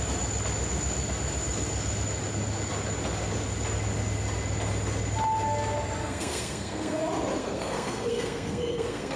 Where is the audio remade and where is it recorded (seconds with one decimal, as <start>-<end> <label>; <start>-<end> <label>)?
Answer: 0.0-6.0 recorded; 6.0-7.0 remade; 7.0-7.4 recorded; 7.4-9.2 remade